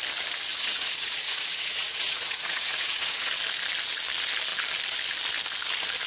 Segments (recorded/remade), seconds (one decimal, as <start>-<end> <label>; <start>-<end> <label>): 0.0-0.5 recorded; 0.5-3.3 remade; 3.3-6.1 recorded